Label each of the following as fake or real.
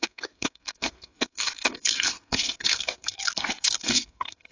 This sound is fake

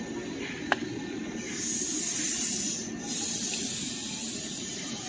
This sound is real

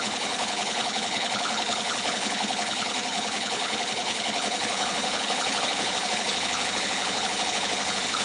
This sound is fake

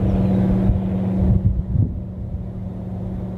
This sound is real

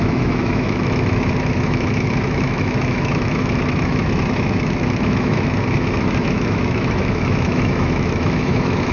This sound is fake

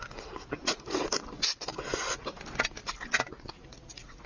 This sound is real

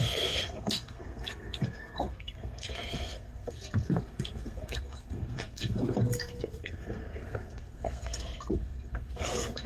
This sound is fake